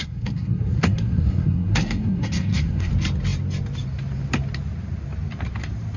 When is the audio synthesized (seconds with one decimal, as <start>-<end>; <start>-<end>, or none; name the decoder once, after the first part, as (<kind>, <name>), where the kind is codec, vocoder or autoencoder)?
0.0-2.9 (codec, SNAC)